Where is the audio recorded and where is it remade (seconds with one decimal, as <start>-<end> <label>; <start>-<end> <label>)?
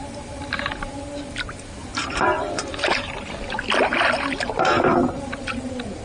0.0-1.9 recorded; 1.9-5.5 remade; 5.5-6.0 recorded